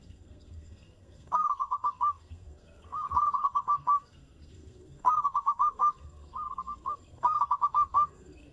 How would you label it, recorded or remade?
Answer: remade